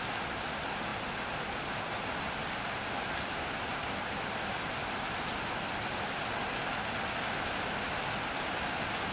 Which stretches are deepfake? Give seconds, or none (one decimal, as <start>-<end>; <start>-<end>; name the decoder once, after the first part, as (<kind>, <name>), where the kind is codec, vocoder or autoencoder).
none